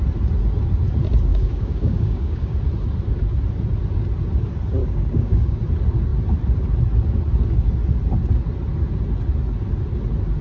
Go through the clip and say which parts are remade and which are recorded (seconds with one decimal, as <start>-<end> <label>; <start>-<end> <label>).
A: 0.0-1.3 recorded; 1.3-2.6 remade; 2.6-4.8 recorded; 4.8-5.6 remade; 5.6-10.4 recorded